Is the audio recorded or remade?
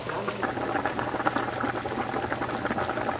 recorded